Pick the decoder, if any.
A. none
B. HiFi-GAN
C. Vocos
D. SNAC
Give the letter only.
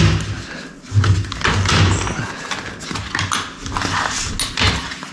A